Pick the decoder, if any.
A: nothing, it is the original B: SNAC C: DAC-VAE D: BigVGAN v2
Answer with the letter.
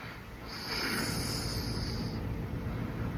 A